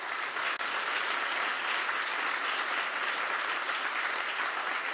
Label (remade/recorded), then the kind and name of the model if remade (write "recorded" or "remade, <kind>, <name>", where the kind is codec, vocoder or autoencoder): recorded